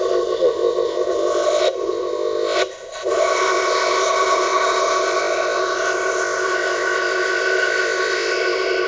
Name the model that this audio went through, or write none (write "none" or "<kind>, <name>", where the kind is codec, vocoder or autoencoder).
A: codec, ZipCodec